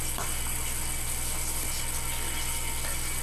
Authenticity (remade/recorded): recorded